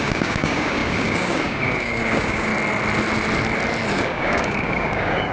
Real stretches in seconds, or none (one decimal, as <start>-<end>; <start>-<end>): 2.5-3.9